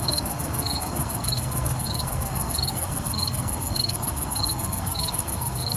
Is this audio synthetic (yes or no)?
yes